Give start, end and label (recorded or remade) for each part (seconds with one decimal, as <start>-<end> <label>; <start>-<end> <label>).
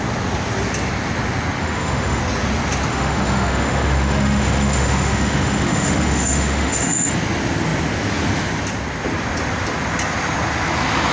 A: 0.0-1.6 recorded; 1.6-2.2 remade; 2.2-2.9 recorded; 2.9-7.1 remade; 7.1-11.1 recorded